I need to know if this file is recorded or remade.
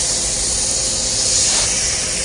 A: recorded